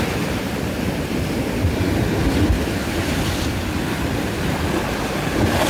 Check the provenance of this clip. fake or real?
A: real